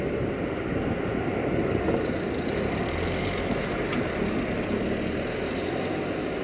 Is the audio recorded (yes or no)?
yes